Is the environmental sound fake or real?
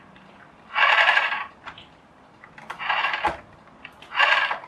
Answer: fake